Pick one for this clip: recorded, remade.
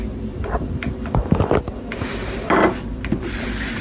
recorded